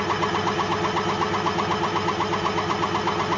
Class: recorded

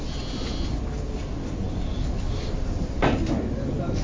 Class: recorded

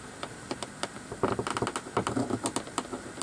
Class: recorded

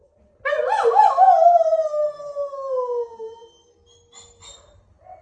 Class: recorded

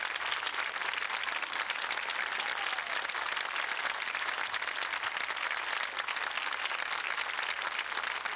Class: recorded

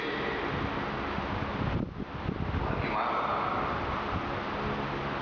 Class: recorded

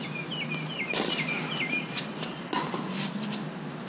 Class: recorded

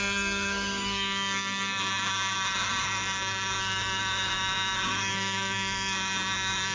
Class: remade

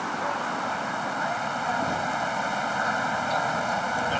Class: recorded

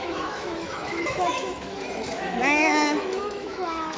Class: remade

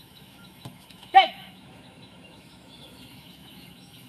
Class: remade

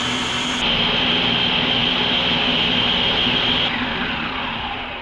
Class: recorded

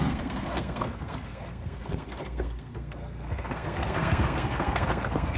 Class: remade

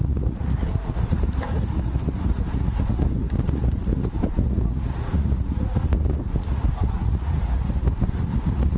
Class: remade